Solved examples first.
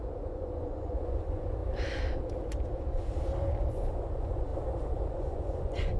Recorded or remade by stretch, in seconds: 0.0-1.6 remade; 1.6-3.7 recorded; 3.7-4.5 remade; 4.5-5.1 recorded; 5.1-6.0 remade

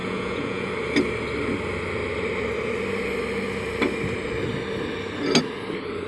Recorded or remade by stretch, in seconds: 0.0-0.7 remade; 0.7-6.1 recorded

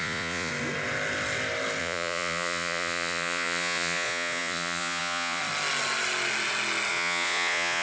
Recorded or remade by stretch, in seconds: 0.0-0.5 remade; 0.5-1.8 recorded; 1.8-5.4 remade; 5.4-6.9 recorded; 6.9-7.8 remade

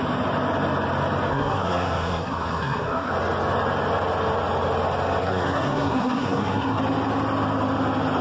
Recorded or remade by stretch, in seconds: 0.0-1.3 recorded; 1.3-3.1 remade; 3.1-5.2 recorded; 5.2-6.8 remade; 6.8-8.2 recorded